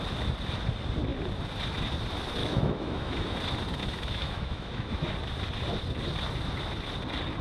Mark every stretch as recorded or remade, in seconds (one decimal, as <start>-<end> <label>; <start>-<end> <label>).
0.0-2.4 recorded; 2.4-3.4 remade; 3.4-3.8 recorded; 3.8-5.1 remade; 5.1-7.4 recorded